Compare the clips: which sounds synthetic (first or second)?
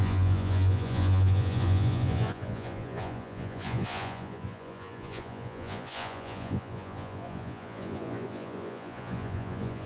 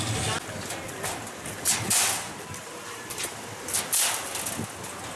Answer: first